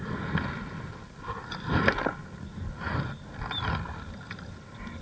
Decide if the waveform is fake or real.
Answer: real